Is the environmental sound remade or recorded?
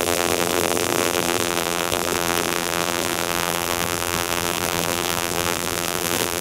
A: remade